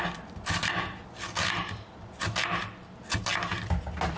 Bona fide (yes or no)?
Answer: yes